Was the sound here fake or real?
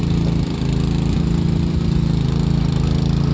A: real